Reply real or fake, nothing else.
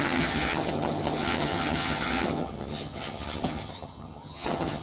fake